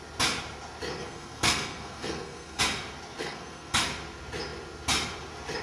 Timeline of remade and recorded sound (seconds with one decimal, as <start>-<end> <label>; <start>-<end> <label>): 0.0-1.0 recorded; 1.0-2.6 remade; 2.6-3.2 recorded; 3.2-3.8 remade; 3.8-5.6 recorded